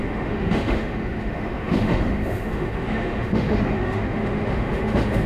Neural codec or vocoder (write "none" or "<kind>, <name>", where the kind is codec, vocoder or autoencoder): autoencoder, DAC-VAE